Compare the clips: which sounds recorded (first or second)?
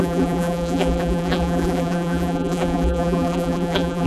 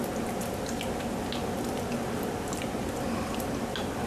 second